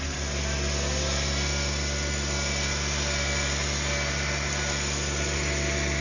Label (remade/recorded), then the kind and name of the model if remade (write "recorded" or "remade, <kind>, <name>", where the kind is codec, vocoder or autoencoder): recorded